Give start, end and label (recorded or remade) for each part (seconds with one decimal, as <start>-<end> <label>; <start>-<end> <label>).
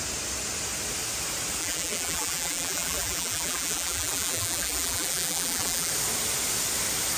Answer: 0.0-1.6 recorded; 1.6-5.9 remade; 5.9-7.2 recorded